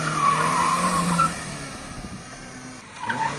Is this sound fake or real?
fake